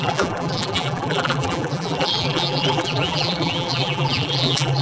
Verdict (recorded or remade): remade